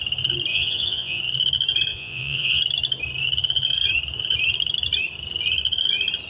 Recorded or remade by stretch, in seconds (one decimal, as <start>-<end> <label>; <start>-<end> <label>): 0.0-0.5 recorded; 0.5-1.2 remade; 1.2-1.9 recorded; 1.9-2.6 remade; 2.6-6.3 recorded